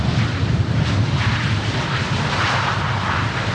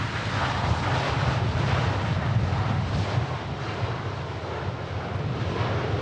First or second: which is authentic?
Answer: second